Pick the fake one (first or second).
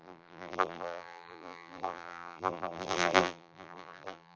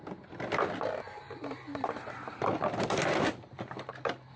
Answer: first